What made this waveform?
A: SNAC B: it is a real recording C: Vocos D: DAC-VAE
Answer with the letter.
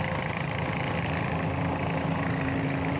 B